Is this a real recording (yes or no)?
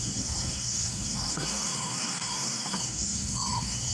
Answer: no